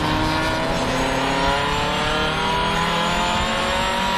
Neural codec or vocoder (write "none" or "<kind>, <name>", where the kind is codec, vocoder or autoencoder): none